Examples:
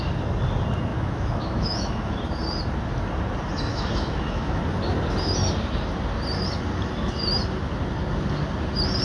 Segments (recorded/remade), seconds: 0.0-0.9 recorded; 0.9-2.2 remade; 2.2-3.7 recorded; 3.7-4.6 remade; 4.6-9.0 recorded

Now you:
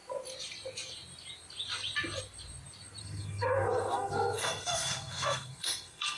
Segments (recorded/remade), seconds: 0.0-3.0 recorded; 3.0-6.2 remade